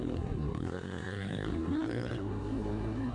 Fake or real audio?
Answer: fake